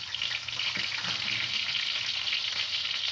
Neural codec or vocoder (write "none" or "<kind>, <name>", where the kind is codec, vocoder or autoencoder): none